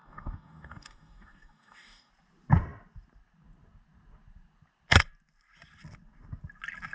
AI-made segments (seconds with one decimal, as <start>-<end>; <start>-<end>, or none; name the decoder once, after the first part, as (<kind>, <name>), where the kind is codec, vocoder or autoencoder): 0.0-2.1 (codec, DAC)